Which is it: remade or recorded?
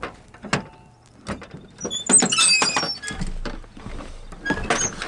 recorded